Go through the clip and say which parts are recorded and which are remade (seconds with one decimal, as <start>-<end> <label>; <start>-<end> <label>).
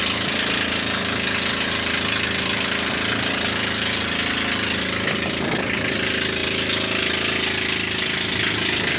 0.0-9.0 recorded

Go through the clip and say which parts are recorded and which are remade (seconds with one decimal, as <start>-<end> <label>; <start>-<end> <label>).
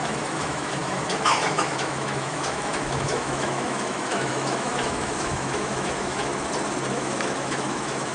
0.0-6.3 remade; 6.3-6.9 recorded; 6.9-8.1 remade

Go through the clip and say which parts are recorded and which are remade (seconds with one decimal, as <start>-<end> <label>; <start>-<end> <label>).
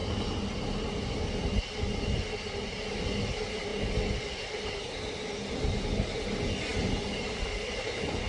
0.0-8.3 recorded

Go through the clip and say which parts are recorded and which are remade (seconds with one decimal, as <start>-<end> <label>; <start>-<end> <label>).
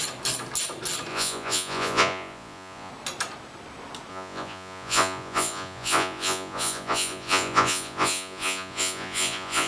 0.0-1.1 recorded; 1.1-2.9 remade; 2.9-4.1 recorded; 4.1-9.7 remade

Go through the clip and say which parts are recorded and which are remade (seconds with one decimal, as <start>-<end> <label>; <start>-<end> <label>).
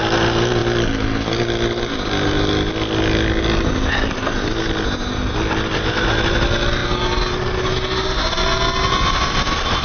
0.0-9.8 recorded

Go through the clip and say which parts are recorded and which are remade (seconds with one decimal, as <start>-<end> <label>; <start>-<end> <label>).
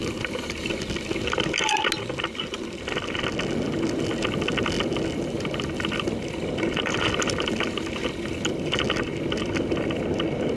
0.0-0.7 remade; 0.7-10.6 recorded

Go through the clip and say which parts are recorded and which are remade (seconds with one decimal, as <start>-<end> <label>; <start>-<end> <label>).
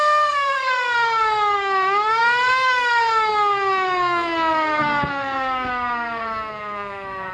0.0-7.3 remade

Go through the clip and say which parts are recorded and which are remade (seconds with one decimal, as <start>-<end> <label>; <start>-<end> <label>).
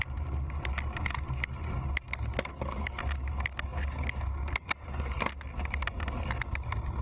0.0-2.5 recorded; 2.5-3.0 remade; 3.0-7.0 recorded